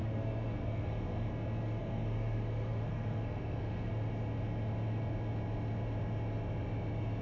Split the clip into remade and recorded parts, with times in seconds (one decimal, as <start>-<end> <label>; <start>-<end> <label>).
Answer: 0.0-1.3 remade; 1.3-1.8 recorded; 1.8-3.9 remade; 3.9-7.2 recorded